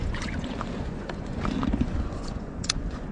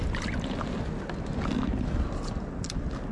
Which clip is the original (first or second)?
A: second